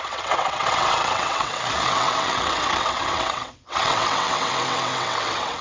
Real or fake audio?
fake